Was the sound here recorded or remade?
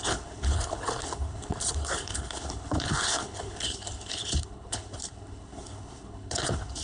remade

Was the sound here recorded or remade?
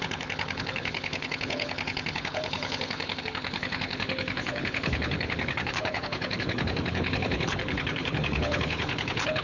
remade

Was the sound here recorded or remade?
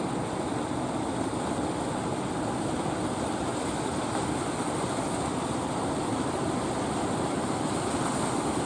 recorded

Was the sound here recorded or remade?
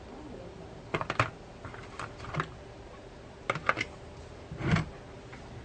recorded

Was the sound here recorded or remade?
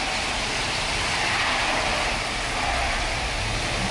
recorded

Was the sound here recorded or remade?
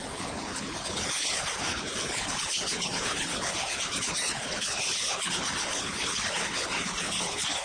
remade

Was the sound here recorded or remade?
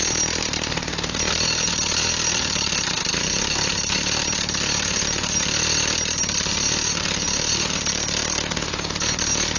recorded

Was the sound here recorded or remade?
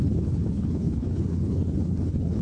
remade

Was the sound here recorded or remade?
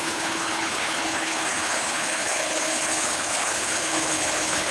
remade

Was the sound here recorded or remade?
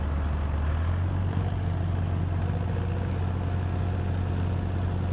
recorded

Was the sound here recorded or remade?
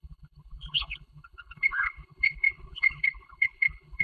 remade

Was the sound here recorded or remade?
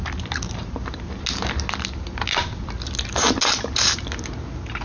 recorded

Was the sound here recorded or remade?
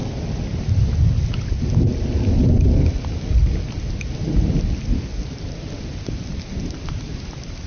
recorded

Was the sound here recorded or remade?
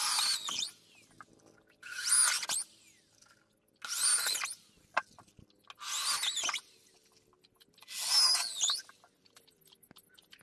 recorded